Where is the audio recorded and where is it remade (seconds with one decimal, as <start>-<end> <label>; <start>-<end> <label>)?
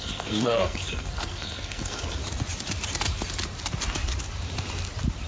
0.0-2.2 remade; 2.2-5.3 recorded